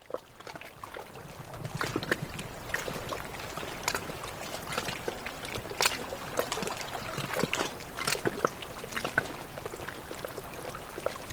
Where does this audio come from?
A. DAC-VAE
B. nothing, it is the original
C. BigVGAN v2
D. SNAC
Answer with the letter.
B